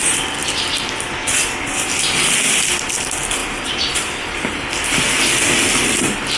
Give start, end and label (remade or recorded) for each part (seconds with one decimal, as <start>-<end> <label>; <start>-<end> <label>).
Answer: 0.0-3.4 recorded; 3.4-4.7 remade; 4.7-6.4 recorded